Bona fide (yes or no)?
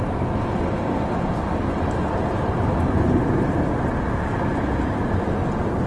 yes